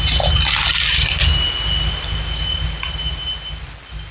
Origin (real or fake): real